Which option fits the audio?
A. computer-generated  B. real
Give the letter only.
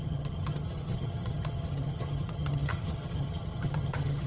A